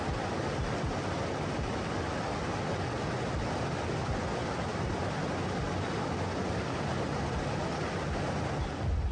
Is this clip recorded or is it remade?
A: recorded